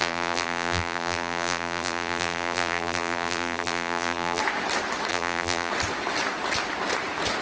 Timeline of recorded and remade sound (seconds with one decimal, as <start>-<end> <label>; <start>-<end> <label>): 0.0-4.4 remade; 4.4-5.1 recorded; 5.1-5.7 remade; 5.7-7.4 recorded